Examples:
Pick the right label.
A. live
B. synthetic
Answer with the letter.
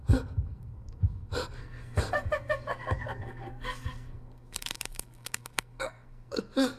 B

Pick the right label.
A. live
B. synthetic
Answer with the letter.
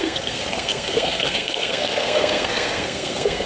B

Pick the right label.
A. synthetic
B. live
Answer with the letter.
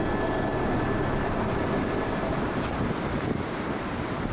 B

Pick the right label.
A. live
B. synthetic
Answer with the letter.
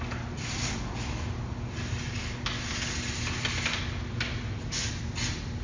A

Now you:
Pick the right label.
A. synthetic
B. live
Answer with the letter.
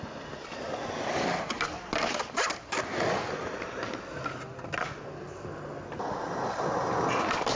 B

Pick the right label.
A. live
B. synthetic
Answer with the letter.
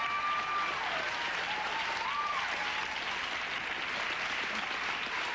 A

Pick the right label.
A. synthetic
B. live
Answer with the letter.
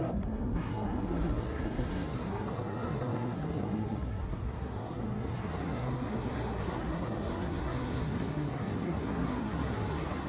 A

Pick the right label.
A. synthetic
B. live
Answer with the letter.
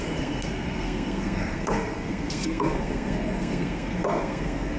A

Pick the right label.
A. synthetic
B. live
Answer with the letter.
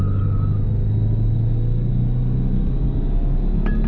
B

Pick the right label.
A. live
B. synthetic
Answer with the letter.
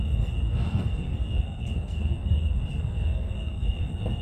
B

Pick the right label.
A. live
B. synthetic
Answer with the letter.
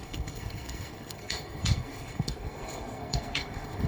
B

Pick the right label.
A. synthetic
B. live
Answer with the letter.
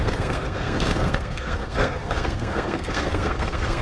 A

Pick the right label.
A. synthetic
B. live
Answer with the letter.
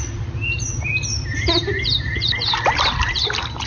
B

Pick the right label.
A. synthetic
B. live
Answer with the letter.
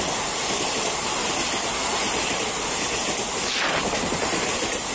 B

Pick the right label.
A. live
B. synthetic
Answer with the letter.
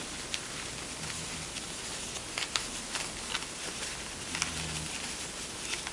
A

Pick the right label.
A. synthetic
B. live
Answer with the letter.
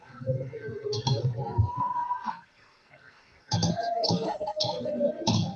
A